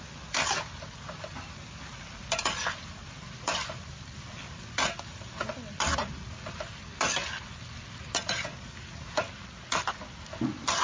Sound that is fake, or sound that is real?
real